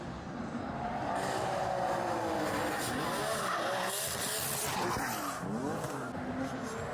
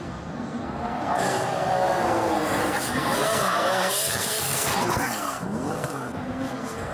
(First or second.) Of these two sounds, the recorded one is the first